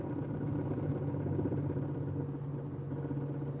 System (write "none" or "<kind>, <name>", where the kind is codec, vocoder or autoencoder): none